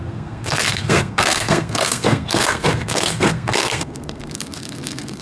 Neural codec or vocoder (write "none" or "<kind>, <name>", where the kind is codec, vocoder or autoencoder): codec, SNAC